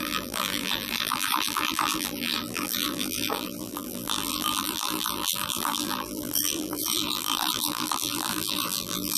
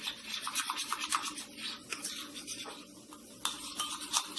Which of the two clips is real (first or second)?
second